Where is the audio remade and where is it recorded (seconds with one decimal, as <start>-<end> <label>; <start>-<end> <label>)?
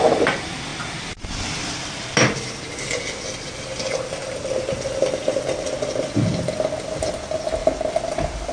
0.0-8.5 recorded